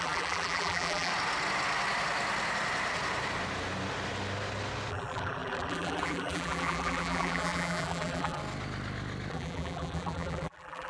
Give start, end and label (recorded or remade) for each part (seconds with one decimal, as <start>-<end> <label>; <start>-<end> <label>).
0.0-1.1 remade; 1.1-4.9 recorded; 4.9-8.4 remade; 8.4-9.3 recorded; 9.3-10.9 remade